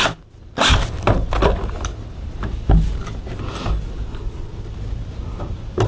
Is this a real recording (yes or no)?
yes